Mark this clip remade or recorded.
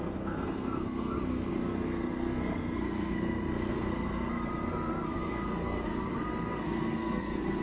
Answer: remade